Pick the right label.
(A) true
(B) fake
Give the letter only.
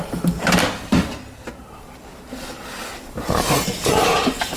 A